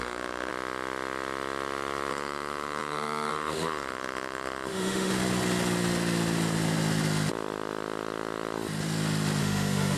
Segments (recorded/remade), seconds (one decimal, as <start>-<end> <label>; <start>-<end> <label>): 0.0-0.5 remade; 0.5-2.1 recorded; 2.1-5.1 remade; 5.1-9.4 recorded; 9.4-10.0 remade